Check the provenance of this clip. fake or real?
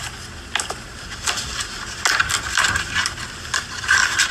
real